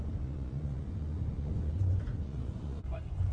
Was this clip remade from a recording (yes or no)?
yes